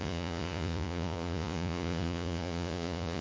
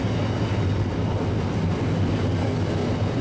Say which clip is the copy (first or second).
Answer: first